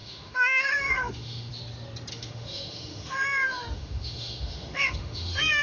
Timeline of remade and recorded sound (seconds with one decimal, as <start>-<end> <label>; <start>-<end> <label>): 0.0-1.5 remade; 1.5-2.1 recorded; 2.1-5.6 remade